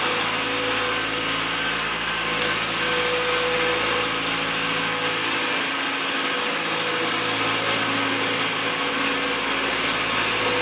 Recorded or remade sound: recorded